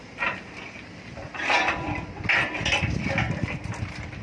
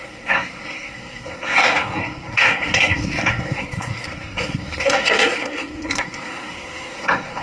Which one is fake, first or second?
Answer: second